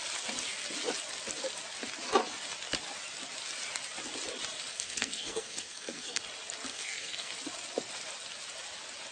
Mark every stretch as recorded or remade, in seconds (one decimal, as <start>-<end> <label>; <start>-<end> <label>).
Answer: 0.0-4.7 recorded; 4.7-6.2 remade; 6.2-6.7 recorded; 6.7-7.3 remade; 7.3-9.1 recorded